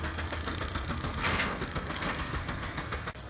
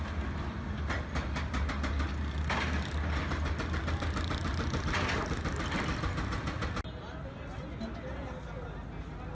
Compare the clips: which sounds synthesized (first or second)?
first